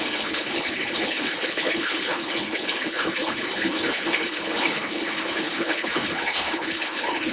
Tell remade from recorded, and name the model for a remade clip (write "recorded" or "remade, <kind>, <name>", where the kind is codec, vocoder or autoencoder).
remade, codec, HILCodec